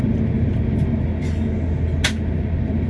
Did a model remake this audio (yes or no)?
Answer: no